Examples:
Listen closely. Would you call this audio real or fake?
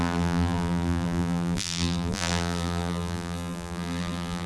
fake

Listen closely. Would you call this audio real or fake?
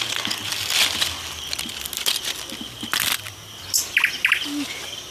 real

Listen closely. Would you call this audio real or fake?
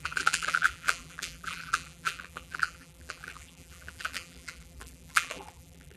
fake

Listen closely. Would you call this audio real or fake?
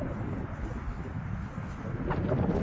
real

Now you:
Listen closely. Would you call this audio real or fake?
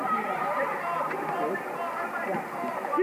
real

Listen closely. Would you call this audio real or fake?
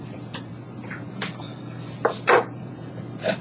fake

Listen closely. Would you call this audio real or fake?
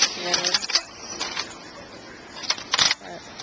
real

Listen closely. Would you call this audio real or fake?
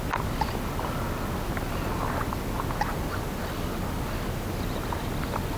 real